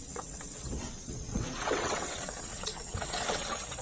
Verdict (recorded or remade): remade